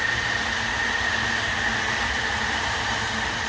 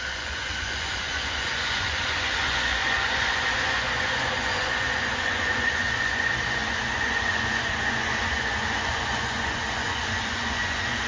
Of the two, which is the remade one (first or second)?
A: second